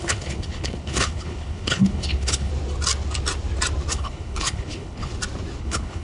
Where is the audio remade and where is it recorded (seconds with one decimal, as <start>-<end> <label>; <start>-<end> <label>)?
0.0-2.5 remade; 2.5-3.9 recorded; 3.9-5.1 remade; 5.1-5.6 recorded; 5.6-6.0 remade